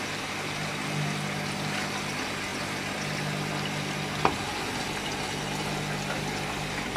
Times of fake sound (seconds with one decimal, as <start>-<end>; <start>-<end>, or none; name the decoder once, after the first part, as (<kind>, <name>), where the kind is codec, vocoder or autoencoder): none